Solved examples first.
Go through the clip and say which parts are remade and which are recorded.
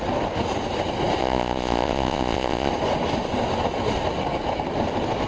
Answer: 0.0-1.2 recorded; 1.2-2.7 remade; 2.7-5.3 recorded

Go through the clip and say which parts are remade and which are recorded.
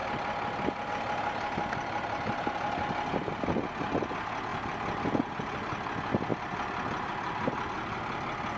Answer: 0.0-8.6 recorded